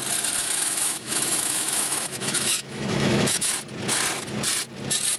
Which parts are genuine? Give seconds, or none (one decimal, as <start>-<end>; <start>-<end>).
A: 0.0-0.4; 3.5-5.2